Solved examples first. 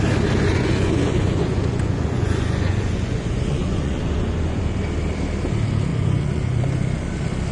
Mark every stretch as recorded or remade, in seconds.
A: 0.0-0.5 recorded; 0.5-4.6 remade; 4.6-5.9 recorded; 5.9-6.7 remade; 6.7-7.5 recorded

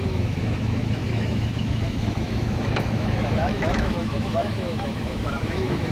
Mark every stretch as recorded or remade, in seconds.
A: 0.0-5.9 remade